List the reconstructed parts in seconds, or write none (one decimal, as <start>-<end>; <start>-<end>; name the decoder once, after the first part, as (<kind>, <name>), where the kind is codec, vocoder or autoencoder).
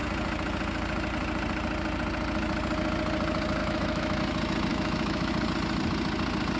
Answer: 3.6-4.2 (autoencoder, DAC-VAE); 4.7-5.3